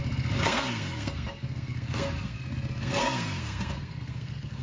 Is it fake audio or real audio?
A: fake